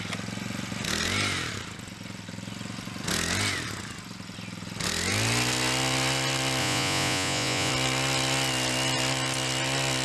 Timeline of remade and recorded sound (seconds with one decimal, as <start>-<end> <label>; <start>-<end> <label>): 0.0-6.6 recorded; 6.6-7.7 remade; 7.7-10.0 recorded